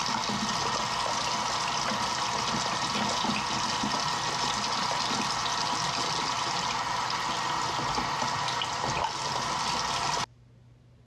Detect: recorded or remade recorded